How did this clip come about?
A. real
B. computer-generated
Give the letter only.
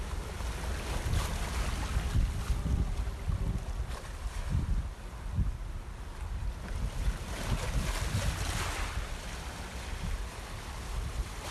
A